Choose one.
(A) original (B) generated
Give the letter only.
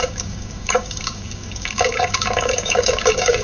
B